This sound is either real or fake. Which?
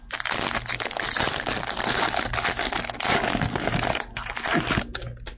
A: real